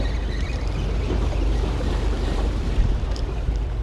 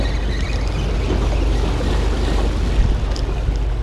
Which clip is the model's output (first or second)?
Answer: first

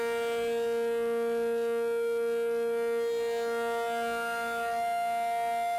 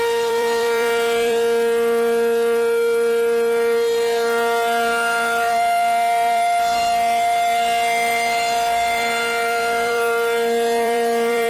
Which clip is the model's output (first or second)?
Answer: second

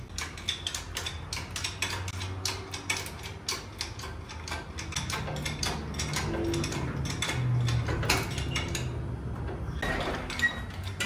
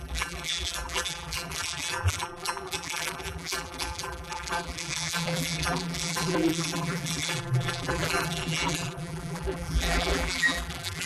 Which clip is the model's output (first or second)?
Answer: second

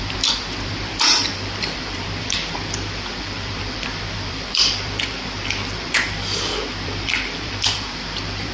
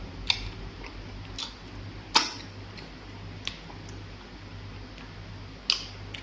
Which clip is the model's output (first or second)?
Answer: first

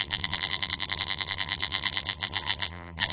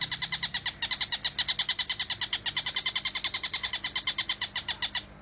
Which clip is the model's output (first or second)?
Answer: first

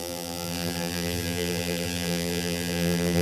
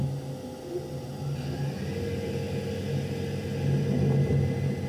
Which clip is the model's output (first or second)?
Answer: first